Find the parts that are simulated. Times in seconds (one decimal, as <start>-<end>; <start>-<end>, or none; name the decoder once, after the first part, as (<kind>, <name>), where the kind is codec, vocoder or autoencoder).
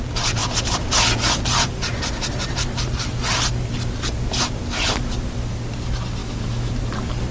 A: 6.2-6.7 (autoencoder, DAC-VAE)